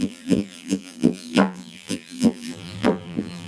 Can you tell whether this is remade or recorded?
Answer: remade